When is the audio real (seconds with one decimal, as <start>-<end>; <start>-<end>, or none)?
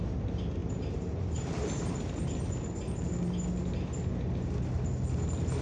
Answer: 0.0-0.6; 1.9-5.6